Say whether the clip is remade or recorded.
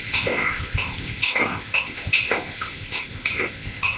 remade